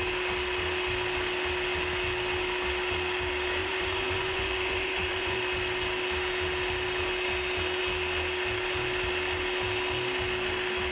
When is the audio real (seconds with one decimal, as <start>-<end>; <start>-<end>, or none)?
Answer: 0.0-3.6; 5.4-10.9